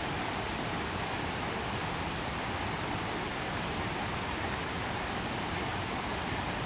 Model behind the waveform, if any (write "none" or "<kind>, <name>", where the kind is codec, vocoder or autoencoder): none